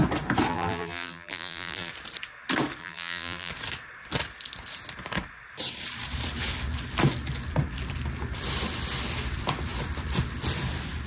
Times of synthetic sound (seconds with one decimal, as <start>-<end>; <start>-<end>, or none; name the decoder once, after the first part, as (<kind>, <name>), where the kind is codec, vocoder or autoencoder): 0.5-1.9 (vocoder, BigVGAN v2); 2.8-3.5